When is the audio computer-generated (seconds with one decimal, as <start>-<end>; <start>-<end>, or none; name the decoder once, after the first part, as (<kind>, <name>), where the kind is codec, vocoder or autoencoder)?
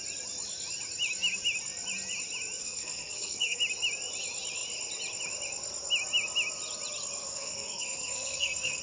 2.6-3.6 (codec, SNAC); 7.2-8.8